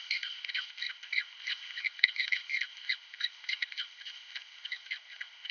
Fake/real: fake